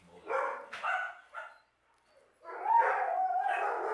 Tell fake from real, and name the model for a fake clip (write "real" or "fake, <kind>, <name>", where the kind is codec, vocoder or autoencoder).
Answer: real